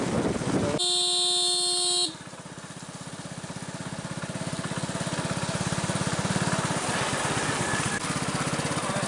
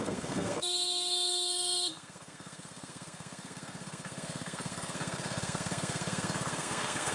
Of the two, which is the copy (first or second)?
second